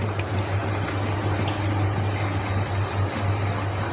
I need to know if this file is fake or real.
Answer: real